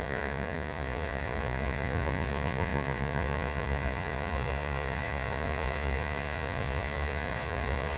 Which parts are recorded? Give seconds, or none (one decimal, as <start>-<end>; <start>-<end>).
none